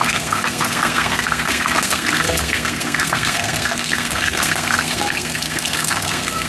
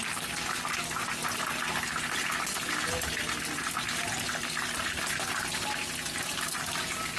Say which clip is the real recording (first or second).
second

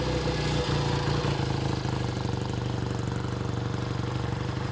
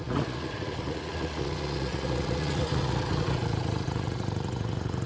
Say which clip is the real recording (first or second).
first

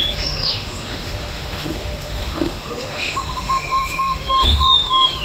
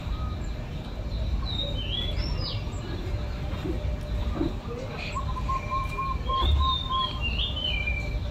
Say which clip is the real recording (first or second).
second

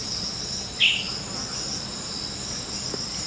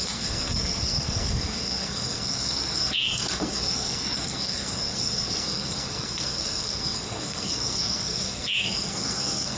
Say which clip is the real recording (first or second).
first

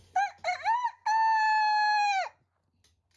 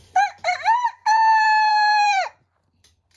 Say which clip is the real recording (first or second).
first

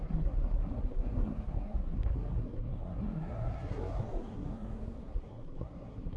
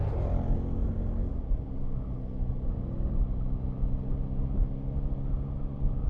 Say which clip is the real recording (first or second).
second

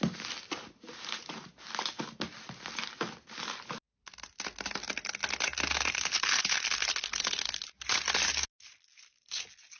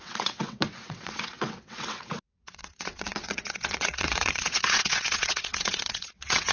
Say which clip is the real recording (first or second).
first